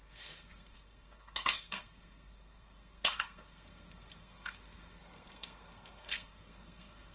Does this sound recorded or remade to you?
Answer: remade